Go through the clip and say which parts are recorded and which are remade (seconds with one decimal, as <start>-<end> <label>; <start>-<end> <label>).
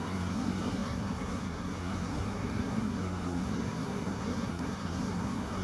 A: 0.0-5.6 remade